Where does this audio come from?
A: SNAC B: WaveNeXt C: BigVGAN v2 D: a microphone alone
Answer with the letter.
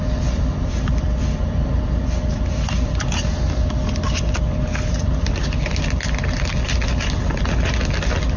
D